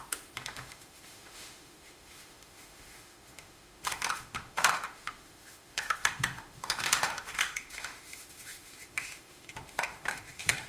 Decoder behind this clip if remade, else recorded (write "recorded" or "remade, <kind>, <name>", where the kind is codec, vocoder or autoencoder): remade, autoencoder, DAC-VAE